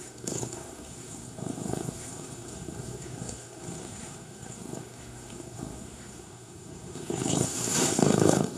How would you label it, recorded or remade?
remade